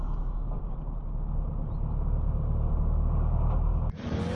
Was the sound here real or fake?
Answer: real